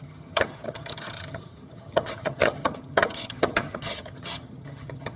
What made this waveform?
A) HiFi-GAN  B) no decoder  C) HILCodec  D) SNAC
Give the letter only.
A